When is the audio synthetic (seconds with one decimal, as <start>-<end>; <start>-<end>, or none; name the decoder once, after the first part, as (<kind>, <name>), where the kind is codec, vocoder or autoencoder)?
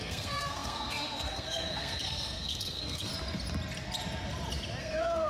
0.0-3.1 (codec, SNAC); 4.8-5.3